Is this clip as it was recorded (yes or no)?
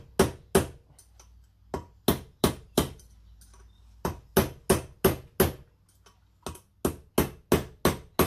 yes